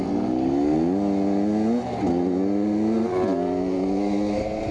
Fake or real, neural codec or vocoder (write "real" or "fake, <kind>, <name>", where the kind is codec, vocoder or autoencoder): real